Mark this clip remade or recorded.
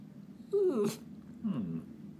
recorded